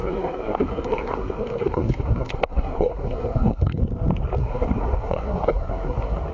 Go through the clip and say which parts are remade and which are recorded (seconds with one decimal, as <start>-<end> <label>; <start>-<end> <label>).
0.0-3.8 remade; 3.8-4.4 recorded; 4.4-6.3 remade